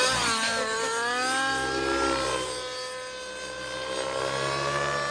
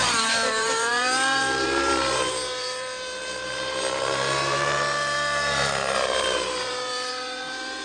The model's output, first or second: second